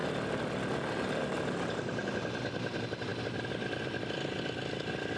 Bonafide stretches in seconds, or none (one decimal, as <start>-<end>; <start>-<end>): 0.0-5.2